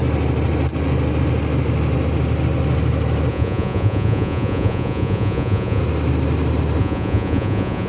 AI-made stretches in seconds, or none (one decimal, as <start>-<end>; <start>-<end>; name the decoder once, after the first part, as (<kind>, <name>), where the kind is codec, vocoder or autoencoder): 3.3-5.8 (vocoder, Vocos); 6.8-7.9